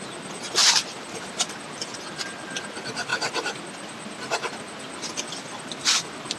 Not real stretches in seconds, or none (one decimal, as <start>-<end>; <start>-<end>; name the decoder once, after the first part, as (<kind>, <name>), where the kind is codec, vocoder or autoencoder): 0.6-2.0 (vocoder, BigVGAN v2)

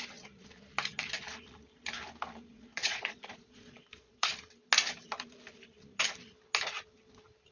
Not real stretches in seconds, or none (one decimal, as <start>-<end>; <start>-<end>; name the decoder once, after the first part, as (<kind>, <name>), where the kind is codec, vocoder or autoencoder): 2.5-4.3 (vocoder, Vocos)